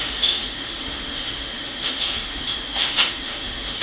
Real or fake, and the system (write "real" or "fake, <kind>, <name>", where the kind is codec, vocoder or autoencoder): fake, autoencoder, DAC-VAE